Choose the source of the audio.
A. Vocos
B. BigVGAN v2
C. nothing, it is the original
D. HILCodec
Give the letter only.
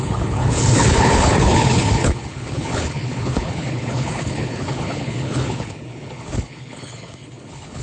D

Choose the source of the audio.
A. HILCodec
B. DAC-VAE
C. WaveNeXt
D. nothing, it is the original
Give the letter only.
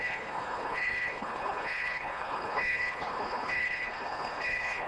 A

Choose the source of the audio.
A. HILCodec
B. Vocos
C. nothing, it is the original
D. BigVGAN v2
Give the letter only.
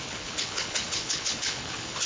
A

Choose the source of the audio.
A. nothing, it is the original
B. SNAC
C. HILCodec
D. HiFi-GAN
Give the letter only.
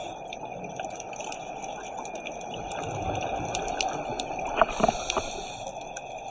A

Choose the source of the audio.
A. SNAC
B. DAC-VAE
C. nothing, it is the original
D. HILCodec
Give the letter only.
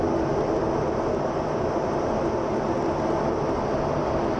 C